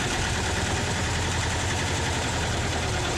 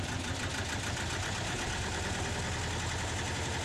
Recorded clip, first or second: second